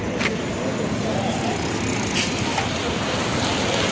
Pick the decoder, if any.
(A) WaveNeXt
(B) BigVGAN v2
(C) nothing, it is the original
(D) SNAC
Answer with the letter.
C